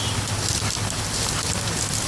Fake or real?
real